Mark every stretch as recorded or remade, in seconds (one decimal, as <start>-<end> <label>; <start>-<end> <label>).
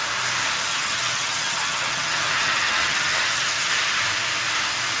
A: 0.0-0.7 recorded; 0.7-3.7 remade; 3.7-5.0 recorded